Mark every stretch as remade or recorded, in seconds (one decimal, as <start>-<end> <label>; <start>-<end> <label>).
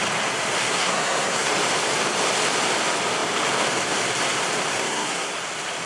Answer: 0.0-0.6 recorded; 0.6-1.5 remade; 1.5-4.7 recorded; 4.7-5.3 remade; 5.3-5.9 recorded